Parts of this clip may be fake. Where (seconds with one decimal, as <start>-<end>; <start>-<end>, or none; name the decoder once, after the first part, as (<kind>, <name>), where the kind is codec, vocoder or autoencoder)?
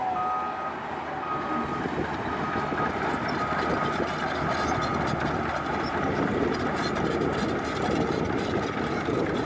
4.9-6.8 (vocoder, BigVGAN v2)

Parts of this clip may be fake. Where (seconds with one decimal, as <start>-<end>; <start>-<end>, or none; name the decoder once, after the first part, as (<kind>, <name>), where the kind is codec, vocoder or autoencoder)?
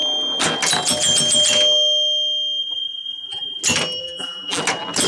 2.6-3.6 (vocoder, BigVGAN v2); 4.0-4.6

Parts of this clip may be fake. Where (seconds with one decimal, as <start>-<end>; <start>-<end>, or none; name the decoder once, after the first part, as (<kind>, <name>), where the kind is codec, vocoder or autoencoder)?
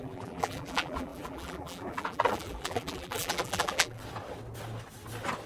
0.0-4.0 (vocoder, BigVGAN v2)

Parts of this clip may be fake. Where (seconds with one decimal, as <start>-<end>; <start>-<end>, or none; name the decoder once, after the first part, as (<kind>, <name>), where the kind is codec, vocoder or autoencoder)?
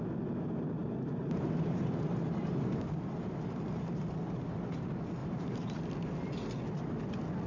0.8-4.2 (vocoder, BigVGAN v2); 5.2-5.8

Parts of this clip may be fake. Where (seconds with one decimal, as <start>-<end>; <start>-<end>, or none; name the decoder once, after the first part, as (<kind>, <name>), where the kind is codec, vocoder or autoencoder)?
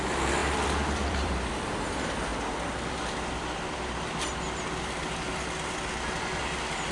0.4-1.5 (vocoder, BigVGAN v2)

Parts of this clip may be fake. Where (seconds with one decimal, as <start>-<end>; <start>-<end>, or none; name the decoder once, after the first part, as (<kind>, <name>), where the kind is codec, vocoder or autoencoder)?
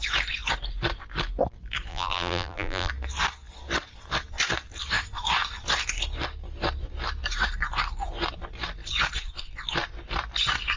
1.9-2.9 (vocoder, BigVGAN v2)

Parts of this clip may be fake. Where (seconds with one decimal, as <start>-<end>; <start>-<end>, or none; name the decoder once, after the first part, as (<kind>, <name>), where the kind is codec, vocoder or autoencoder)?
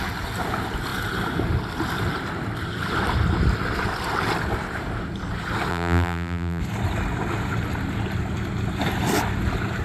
5.7-6.6 (vocoder, BigVGAN v2)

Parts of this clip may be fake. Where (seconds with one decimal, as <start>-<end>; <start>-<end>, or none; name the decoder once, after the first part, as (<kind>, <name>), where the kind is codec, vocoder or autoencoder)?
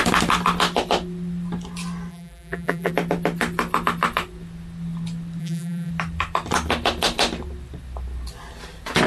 2.1-2.9 (vocoder, BigVGAN v2); 5.4-5.9